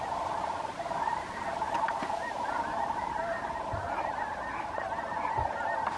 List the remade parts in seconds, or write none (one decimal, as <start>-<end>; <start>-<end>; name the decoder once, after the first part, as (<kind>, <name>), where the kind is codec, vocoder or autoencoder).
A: 0.7-3.6 (vocoder, BigVGAN v2)